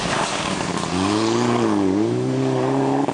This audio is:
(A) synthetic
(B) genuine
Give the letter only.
A